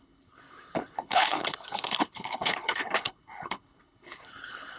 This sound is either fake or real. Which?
fake